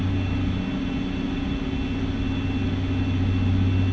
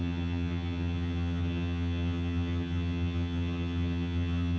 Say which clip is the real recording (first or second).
first